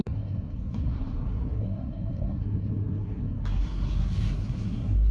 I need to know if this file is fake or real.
fake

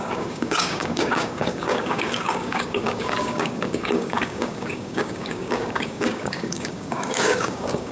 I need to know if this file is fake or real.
fake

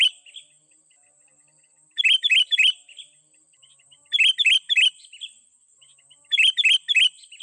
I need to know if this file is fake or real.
real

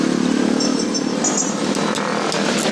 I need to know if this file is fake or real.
real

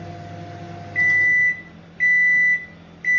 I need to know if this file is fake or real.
real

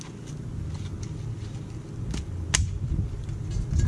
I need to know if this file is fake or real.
real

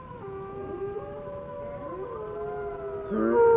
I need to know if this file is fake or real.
real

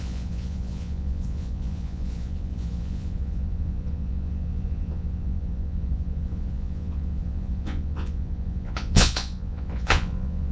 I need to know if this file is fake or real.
fake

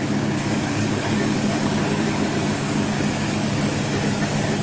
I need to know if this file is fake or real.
fake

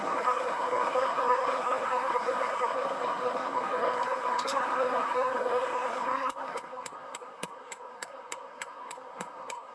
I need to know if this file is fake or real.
fake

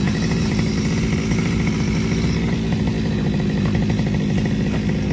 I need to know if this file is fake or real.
real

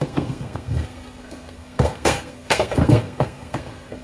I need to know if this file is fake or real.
fake